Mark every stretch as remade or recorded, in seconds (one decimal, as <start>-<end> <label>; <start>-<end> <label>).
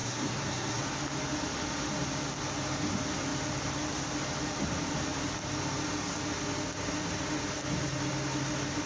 0.0-0.8 remade; 0.8-8.9 recorded